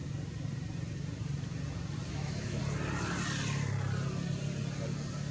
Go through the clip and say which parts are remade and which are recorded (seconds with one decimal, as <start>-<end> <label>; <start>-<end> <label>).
0.0-2.1 recorded; 2.1-2.6 remade; 2.6-5.3 recorded